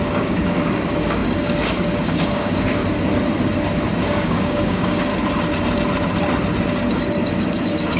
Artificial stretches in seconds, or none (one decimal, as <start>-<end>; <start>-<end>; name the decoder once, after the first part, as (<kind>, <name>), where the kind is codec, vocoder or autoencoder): 0.0-2.8 (codec, DAC); 4.0-5.1; 6.7-8.0